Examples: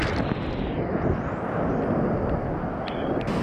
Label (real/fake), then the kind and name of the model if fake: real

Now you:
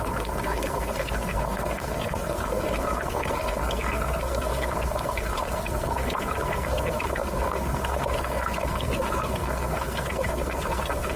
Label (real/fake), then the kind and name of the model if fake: fake, codec, SNAC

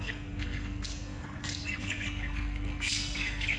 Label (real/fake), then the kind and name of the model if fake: fake, codec, SNAC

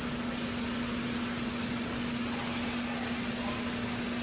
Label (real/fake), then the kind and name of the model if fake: real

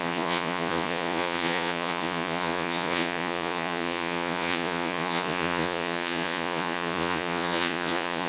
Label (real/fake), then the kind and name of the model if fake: fake, vocoder, Vocos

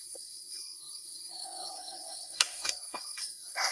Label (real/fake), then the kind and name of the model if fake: fake, codec, SNAC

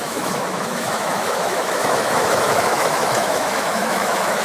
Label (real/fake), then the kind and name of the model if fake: fake, autoencoder, DAC-VAE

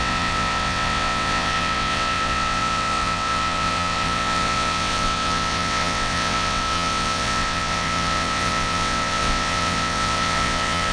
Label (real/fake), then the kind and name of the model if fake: fake, vocoder, WaveNeXt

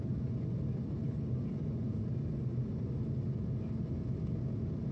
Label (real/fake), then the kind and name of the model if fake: real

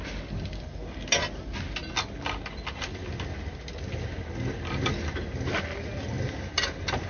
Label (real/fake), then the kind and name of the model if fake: real